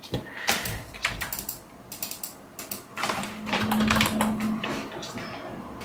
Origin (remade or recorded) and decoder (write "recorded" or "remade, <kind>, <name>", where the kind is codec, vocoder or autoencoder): recorded